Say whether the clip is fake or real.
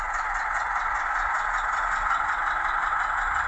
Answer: real